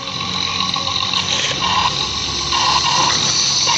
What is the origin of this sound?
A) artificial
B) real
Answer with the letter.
B